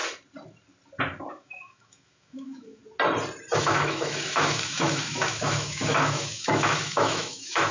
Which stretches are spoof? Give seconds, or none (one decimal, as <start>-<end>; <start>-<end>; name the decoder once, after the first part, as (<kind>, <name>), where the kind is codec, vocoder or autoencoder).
1.3-2.8 (autoencoder, DAC-VAE); 3.6-7.7